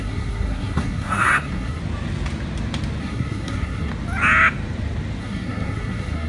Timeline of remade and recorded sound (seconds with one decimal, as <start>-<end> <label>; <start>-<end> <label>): 0.0-1.8 remade; 1.8-3.0 recorded; 3.0-3.9 remade; 3.9-5.2 recorded; 5.2-6.3 remade